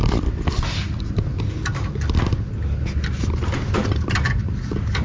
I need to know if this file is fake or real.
real